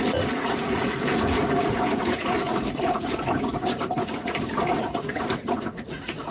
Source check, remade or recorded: remade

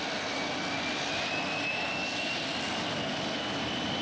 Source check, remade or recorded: recorded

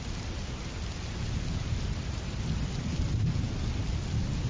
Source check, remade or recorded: recorded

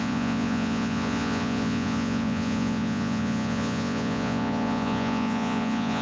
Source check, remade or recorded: remade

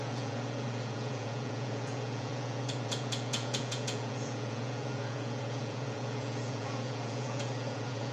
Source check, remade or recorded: remade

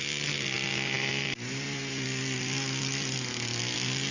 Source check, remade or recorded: recorded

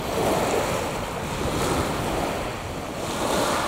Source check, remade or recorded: recorded